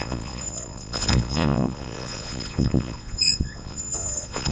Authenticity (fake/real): fake